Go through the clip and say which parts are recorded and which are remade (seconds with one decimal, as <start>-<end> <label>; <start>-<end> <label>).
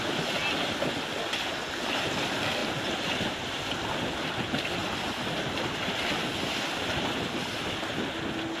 0.0-8.6 recorded